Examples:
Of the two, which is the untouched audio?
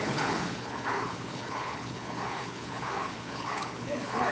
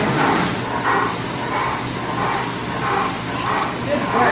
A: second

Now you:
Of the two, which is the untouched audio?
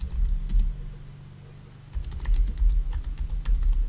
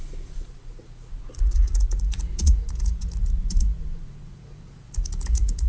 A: first